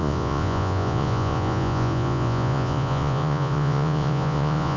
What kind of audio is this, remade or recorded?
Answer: remade